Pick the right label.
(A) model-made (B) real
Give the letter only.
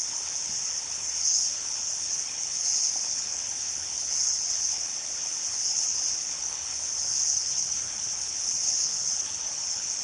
A